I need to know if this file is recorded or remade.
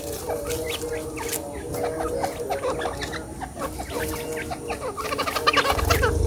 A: recorded